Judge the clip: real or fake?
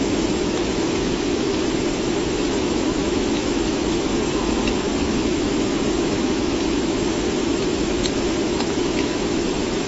fake